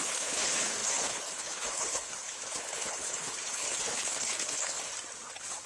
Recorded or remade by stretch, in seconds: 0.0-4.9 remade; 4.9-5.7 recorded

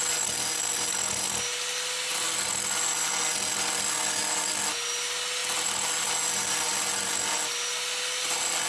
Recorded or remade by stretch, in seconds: 0.0-8.7 recorded